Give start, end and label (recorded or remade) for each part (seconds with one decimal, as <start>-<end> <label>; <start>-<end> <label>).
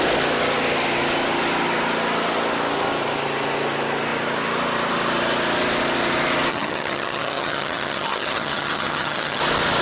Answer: 0.0-6.5 recorded; 6.5-9.4 remade; 9.4-9.8 recorded